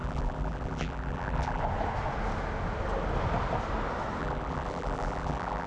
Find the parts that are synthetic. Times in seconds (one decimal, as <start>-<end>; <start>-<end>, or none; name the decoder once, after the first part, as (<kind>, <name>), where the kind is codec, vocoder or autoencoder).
0.0-1.6 (vocoder, BigVGAN v2); 4.2-5.7